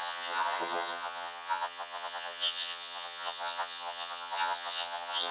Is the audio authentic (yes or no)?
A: no